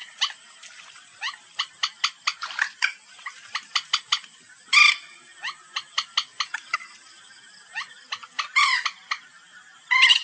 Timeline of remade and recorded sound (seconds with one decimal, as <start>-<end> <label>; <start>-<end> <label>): 0.0-10.2 recorded